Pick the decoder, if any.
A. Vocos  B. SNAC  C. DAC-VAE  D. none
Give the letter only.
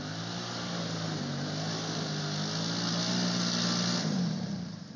D